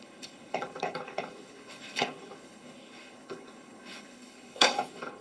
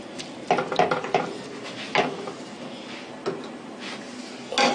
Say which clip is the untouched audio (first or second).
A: second